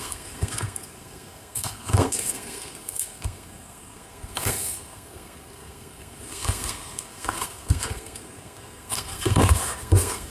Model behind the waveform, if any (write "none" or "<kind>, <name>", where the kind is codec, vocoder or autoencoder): codec, SNAC